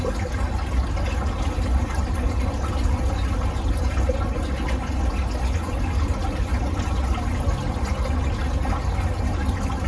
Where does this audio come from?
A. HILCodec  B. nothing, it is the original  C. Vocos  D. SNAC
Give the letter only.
B